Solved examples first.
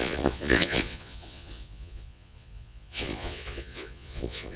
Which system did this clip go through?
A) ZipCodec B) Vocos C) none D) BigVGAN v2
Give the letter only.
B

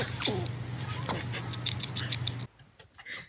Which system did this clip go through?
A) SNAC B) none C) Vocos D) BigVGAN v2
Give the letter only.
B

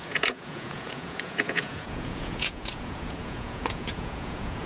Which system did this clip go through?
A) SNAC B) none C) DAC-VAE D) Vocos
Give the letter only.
D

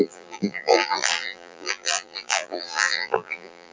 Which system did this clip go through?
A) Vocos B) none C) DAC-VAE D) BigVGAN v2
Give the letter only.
D